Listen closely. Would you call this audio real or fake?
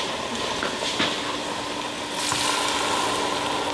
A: real